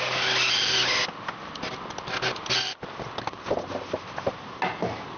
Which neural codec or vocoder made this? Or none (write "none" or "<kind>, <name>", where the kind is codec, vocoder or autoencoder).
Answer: none